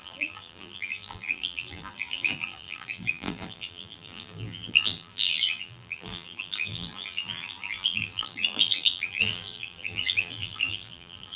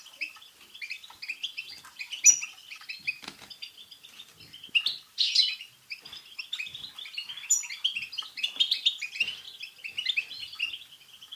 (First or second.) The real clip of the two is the second